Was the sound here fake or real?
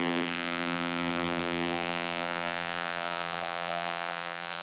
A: fake